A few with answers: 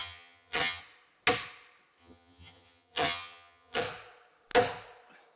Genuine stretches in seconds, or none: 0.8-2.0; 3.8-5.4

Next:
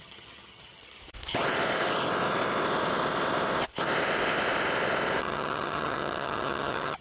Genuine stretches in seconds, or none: 1.0-5.2